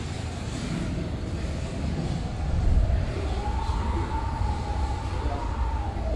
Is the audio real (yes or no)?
yes